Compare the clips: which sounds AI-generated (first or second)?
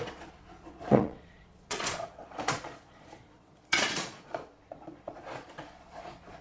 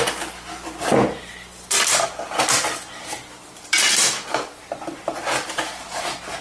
first